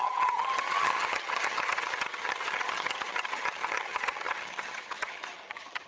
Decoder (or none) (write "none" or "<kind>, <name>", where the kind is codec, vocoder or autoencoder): vocoder, HiFi-GAN